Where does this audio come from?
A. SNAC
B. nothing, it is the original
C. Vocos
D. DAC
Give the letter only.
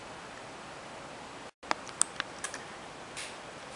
B